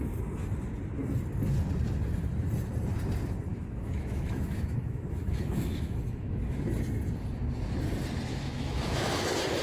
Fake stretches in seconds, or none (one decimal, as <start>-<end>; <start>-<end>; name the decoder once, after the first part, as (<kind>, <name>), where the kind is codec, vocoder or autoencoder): 3.5-6.7 (autoencoder, DAC-VAE); 8.3-9.1